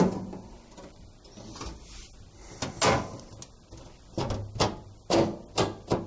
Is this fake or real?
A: real